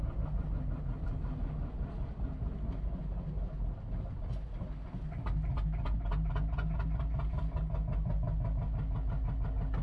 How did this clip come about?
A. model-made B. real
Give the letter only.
B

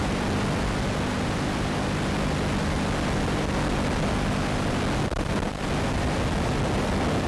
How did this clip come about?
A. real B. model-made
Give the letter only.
A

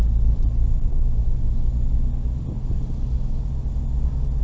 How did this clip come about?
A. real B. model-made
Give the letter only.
A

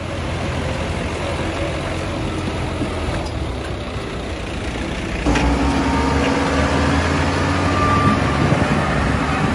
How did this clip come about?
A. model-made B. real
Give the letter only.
B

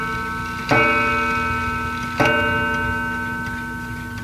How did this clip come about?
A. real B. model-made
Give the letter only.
A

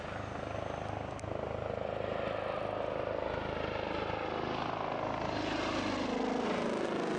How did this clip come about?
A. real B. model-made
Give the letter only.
A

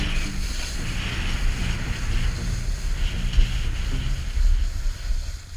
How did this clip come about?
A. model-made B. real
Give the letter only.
B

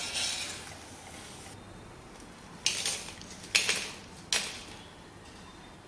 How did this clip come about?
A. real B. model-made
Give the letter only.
A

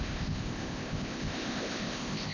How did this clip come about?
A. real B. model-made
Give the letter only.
B